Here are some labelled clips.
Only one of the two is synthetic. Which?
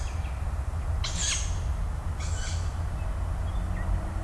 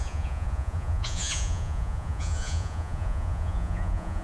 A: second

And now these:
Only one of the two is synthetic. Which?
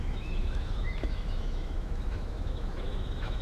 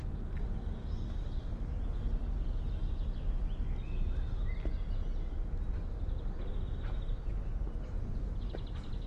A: first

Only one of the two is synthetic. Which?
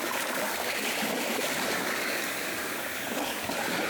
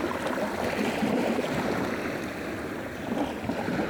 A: first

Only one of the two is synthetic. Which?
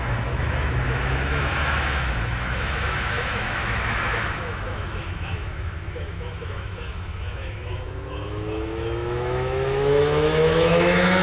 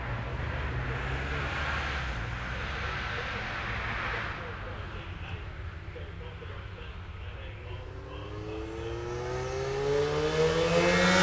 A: first